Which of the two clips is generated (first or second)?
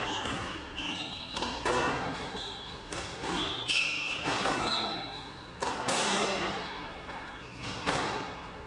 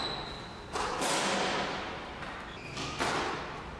first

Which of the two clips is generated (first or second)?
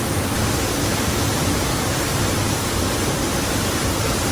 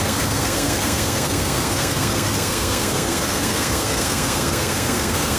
second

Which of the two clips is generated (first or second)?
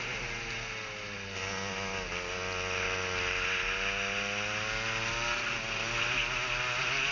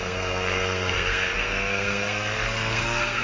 second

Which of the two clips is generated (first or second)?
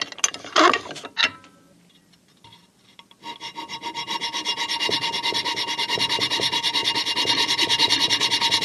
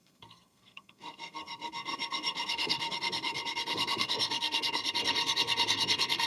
second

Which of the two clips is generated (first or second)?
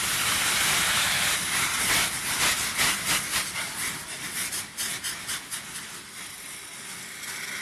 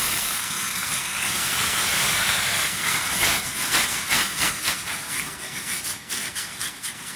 second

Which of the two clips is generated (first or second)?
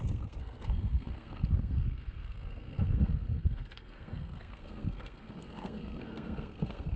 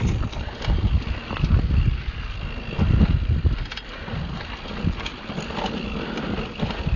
first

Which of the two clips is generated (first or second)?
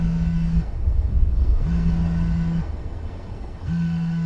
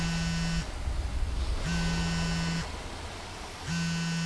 first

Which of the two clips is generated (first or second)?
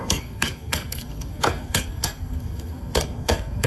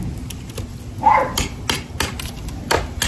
first